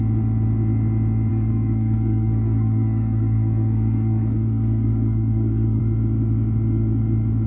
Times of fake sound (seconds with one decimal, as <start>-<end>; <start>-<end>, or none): 1.3-5.8

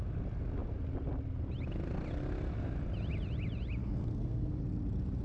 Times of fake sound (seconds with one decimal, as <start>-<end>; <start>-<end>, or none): 3.8-4.6

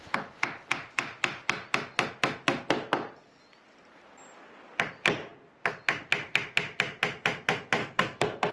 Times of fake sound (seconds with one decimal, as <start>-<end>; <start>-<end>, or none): 7.8-8.5